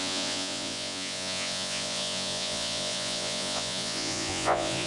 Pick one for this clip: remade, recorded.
remade